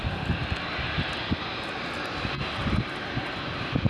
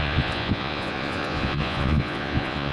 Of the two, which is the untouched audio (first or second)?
first